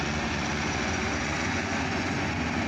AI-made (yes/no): yes